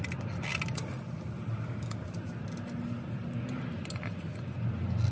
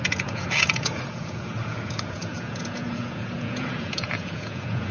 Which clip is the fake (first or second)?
second